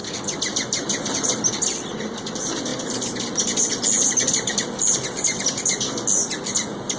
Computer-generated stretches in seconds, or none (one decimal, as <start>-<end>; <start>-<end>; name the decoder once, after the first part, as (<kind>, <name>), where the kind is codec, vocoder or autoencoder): none